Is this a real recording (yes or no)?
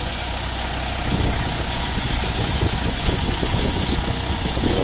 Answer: no